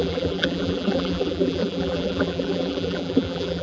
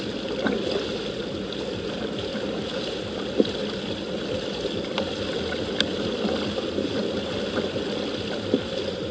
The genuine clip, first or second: second